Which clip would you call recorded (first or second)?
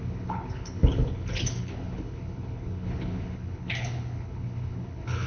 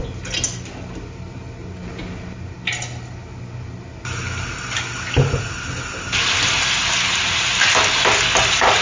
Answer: second